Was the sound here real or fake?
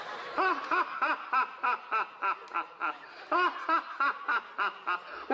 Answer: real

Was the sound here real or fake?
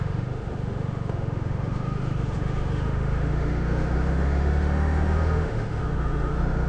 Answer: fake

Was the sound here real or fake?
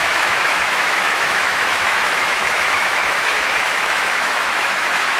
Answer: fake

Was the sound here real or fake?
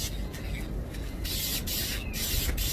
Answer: real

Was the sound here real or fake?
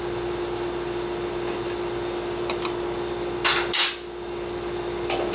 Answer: real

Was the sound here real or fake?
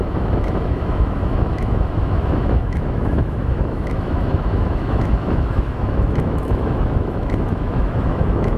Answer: fake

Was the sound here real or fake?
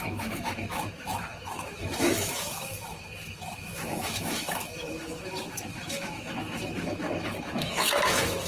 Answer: fake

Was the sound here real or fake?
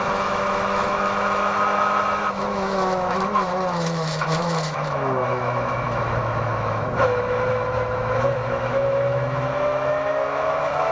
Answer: fake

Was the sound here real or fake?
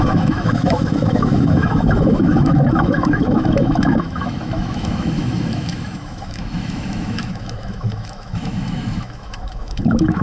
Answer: fake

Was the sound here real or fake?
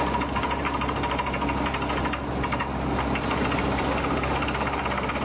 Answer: real